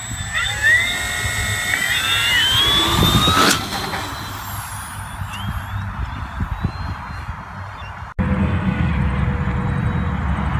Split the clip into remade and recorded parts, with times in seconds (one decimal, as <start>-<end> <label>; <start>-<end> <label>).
0.0-8.4 recorded; 8.4-8.9 remade; 8.9-10.6 recorded